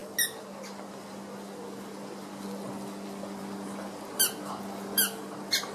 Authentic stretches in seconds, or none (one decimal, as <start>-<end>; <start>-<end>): 0.0-5.7